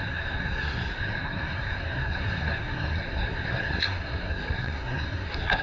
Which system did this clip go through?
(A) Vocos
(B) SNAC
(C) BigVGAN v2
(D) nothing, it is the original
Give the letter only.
B